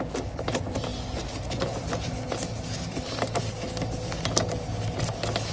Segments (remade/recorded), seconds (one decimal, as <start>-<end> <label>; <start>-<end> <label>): 0.0-5.5 recorded